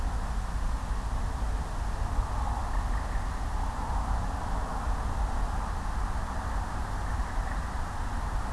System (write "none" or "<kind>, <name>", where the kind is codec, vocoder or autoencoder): none